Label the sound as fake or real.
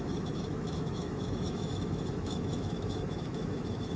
fake